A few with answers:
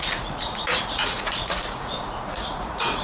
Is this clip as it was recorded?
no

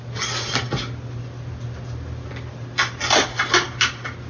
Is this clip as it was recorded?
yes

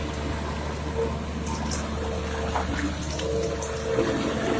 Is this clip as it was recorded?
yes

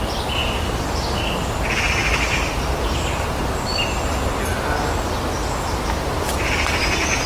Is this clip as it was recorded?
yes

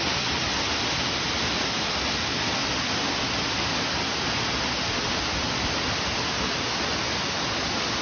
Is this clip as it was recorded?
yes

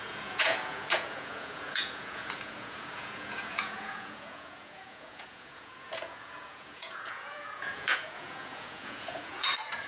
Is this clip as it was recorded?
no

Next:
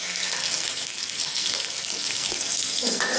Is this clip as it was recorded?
no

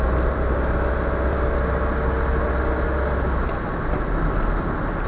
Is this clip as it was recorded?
yes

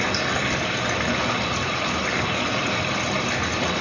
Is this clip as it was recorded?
yes